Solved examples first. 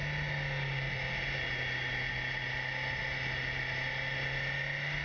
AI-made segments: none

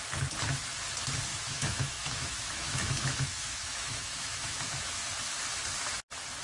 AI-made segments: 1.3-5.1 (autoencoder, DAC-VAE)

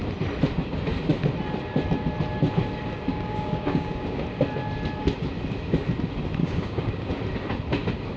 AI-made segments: 3.1-4.2 (codec, DAC); 6.4-7.2

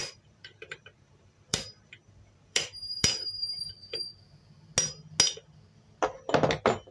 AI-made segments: 0.0-4.1 (vocoder, BigVGAN v2)